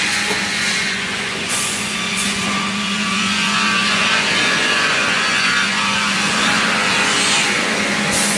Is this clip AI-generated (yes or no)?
yes